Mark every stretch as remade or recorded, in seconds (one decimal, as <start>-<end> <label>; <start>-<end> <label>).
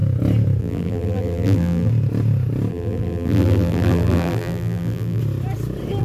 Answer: 0.0-0.6 recorded; 0.6-1.9 remade; 1.9-2.7 recorded; 2.7-5.2 remade; 5.2-6.0 recorded